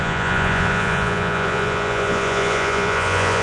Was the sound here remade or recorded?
remade